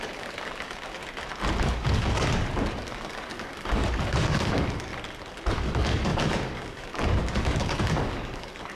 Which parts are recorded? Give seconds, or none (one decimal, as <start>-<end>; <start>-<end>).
1.0-1.6; 4.9-5.5